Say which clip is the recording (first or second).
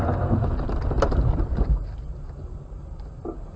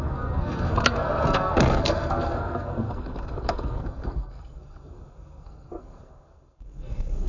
first